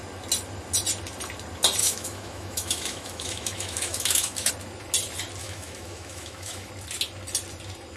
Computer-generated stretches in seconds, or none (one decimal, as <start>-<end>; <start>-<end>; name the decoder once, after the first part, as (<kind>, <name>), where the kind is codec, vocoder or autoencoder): 1.8-4.5 (autoencoder, DAC-VAE); 5.4-6.7